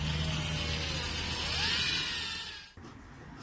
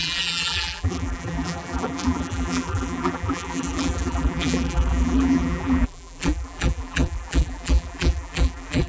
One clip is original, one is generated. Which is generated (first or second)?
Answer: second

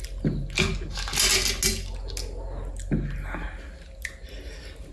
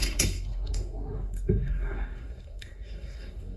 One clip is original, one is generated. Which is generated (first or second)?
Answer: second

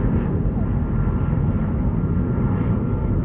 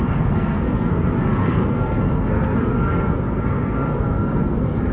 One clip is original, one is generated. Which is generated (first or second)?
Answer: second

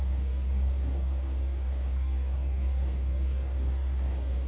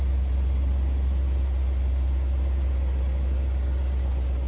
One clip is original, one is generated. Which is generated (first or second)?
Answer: first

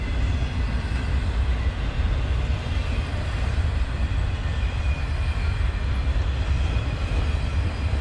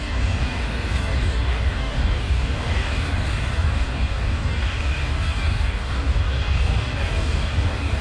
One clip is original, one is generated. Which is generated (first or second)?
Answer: second